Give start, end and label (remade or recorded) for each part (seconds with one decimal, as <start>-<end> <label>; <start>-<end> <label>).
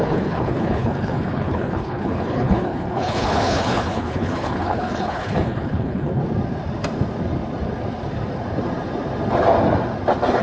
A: 0.0-6.2 remade; 6.2-10.4 recorded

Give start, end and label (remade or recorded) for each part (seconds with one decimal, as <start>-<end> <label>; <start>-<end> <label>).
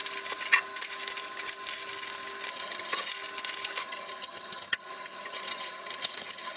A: 0.0-2.5 recorded; 2.5-3.1 remade; 3.1-3.8 recorded; 3.8-6.6 remade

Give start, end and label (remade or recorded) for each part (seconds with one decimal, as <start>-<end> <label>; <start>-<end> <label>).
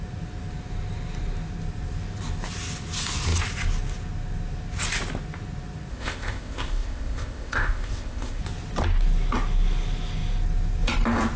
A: 0.0-5.9 recorded; 5.9-8.4 remade; 8.4-11.4 recorded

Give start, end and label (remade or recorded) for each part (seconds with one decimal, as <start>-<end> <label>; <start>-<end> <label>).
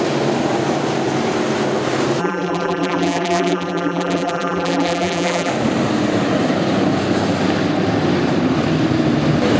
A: 0.0-2.2 recorded; 2.2-5.5 remade; 5.5-9.6 recorded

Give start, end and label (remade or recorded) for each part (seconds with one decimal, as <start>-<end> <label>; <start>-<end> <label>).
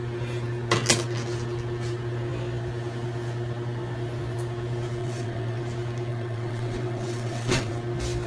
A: 0.0-5.0 recorded; 5.0-5.6 remade; 5.6-6.1 recorded; 6.1-7.7 remade; 7.7-8.3 recorded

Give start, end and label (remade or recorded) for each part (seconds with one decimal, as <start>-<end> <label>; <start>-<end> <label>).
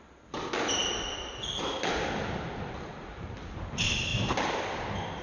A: 0.0-5.2 recorded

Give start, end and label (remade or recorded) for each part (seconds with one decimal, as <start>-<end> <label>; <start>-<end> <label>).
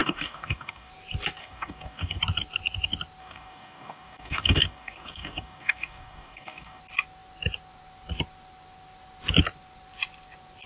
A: 0.0-0.9 remade; 0.9-1.4 recorded; 1.4-2.2 remade; 2.2-3.2 recorded; 3.2-6.8 remade; 6.8-10.7 recorded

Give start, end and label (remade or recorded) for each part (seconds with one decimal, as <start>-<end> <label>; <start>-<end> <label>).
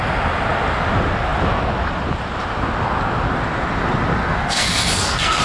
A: 0.0-4.2 recorded; 4.2-5.4 remade